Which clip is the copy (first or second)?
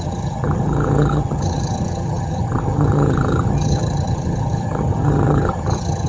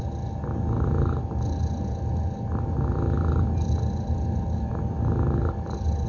first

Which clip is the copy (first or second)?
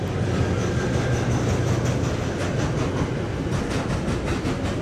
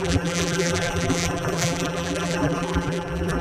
second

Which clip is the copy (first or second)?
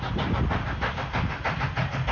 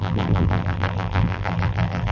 second